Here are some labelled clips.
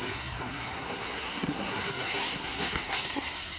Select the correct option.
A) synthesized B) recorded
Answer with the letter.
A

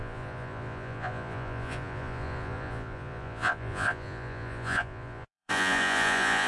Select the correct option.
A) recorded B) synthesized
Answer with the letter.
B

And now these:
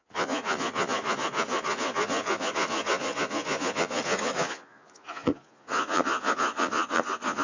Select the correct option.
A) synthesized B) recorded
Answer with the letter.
A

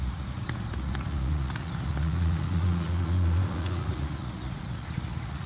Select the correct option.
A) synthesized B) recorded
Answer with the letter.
A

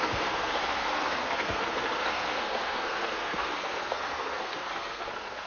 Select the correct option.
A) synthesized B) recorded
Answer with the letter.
A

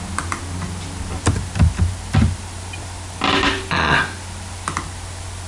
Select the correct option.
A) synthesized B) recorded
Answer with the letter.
B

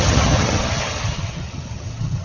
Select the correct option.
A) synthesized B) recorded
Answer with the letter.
A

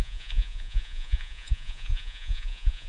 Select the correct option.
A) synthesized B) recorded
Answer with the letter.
A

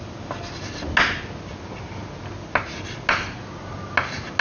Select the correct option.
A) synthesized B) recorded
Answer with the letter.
B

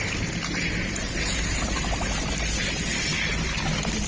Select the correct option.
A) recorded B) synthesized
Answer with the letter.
B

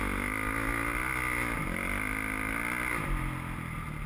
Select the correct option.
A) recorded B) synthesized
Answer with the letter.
A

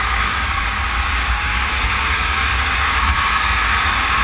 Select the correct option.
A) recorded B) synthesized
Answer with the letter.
B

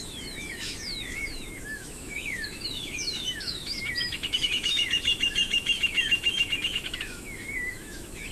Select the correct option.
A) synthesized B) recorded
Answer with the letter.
A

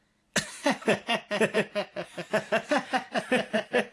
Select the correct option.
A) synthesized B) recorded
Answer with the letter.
B